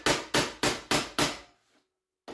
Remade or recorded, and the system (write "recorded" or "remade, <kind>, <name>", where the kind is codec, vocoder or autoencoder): recorded